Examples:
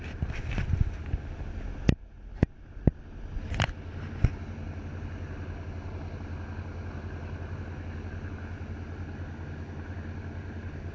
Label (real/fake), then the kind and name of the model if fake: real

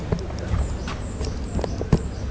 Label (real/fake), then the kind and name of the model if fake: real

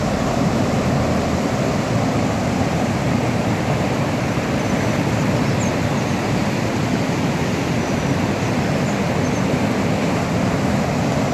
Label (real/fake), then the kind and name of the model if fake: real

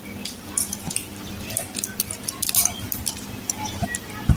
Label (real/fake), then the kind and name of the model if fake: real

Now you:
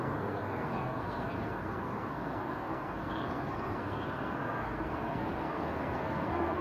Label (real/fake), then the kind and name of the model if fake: fake, codec, SNAC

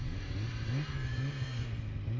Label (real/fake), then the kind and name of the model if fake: real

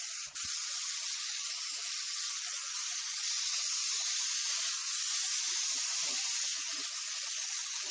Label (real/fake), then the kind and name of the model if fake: real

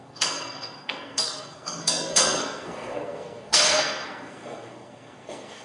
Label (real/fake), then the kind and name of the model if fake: fake, codec, SNAC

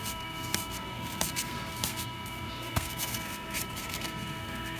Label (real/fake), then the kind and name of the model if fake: fake, codec, SNAC